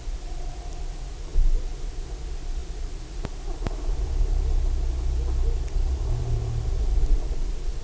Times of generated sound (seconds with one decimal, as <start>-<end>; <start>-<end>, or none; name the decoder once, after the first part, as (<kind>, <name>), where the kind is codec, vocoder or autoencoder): none